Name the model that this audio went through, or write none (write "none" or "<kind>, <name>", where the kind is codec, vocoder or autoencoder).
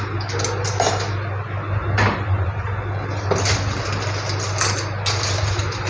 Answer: none